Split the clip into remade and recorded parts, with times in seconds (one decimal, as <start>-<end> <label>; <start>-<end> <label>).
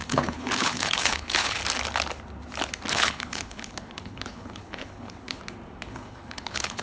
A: 0.0-1.6 remade; 1.6-2.9 recorded; 2.9-5.4 remade; 5.4-5.9 recorded; 5.9-6.8 remade